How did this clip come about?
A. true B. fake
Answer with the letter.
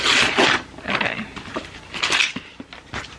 A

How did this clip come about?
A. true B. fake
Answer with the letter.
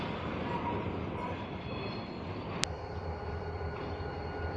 A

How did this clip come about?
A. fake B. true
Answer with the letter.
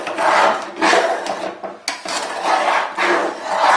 B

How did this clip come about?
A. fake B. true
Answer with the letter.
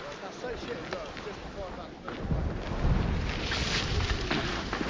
B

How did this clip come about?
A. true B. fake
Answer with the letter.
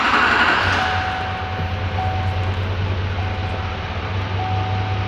A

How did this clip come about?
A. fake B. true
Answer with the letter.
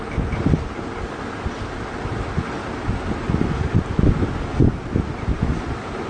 B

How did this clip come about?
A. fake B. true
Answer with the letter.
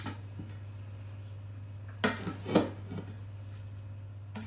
B